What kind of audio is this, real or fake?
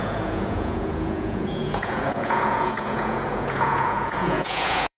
fake